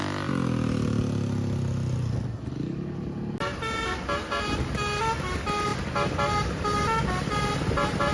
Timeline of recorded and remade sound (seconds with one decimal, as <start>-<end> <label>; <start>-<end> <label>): 0.0-8.1 recorded